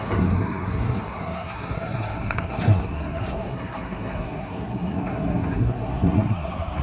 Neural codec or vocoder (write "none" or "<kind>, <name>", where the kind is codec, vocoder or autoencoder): codec, SNAC